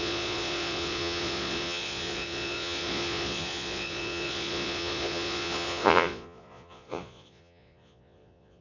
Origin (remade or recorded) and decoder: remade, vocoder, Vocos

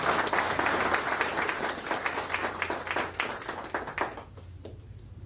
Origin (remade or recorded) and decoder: recorded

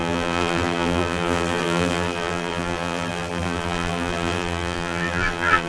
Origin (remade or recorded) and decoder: remade, vocoder, BigVGAN v2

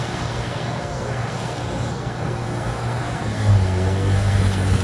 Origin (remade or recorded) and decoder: remade, codec, SNAC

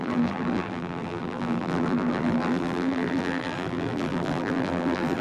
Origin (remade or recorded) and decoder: remade, vocoder, BigVGAN v2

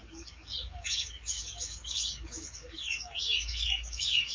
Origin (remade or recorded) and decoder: remade, codec, DAC